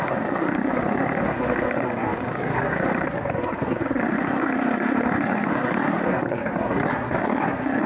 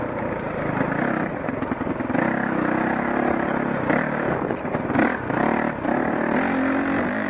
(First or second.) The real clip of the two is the second